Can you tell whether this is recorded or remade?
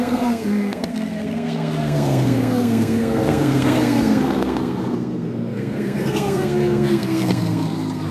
remade